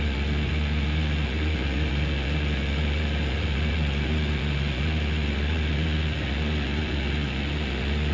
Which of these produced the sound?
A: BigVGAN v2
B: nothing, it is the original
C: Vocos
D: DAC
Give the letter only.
C